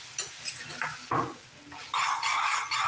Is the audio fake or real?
real